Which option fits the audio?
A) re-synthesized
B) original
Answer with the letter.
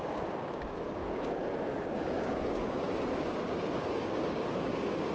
A